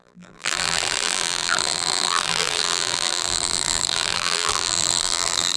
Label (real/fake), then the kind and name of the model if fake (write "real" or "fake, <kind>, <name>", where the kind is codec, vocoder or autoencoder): fake, vocoder, BigVGAN v2